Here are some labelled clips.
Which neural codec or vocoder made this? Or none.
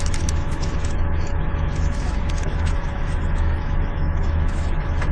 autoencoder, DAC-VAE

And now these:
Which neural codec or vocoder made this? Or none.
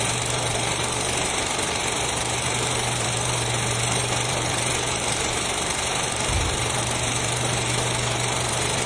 vocoder, BigVGAN v2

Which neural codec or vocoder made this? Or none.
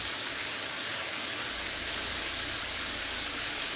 codec, DAC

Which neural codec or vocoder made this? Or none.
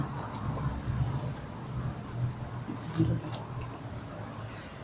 none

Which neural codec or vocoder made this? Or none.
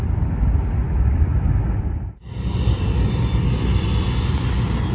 none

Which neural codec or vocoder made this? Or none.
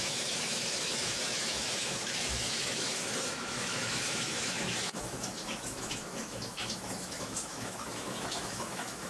autoencoder, DAC-VAE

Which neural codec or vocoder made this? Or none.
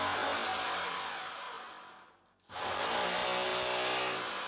none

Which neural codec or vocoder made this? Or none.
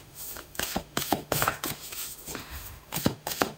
autoencoder, DAC-VAE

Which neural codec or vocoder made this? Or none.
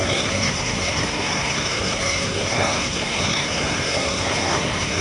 codec, SNAC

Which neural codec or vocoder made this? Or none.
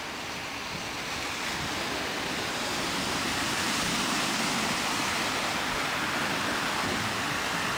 vocoder, BigVGAN v2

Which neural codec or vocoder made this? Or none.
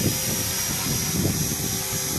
none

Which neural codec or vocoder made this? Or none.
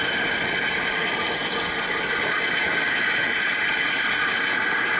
none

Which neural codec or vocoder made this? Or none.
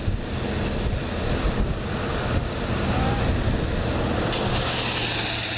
none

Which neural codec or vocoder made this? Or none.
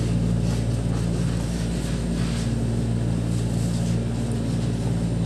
none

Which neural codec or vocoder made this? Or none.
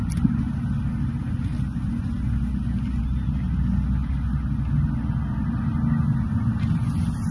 none